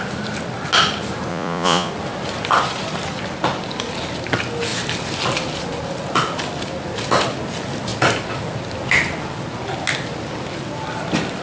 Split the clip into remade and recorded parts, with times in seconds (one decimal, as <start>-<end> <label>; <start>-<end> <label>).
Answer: 0.0-1.3 recorded; 1.3-1.9 remade; 1.9-11.4 recorded